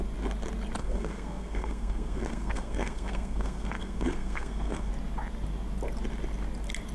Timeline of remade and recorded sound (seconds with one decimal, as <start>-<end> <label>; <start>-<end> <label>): 0.0-0.8 recorded; 0.8-4.9 remade; 4.9-6.9 recorded